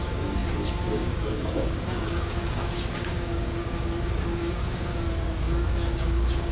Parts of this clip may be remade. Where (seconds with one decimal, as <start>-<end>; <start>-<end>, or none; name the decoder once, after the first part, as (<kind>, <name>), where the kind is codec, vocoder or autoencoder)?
0.0-6.5 (codec, DAC)